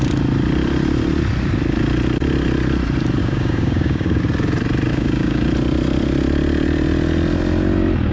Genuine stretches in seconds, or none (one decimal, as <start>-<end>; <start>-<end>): 0.0-3.2; 4.2-4.9; 5.4-8.1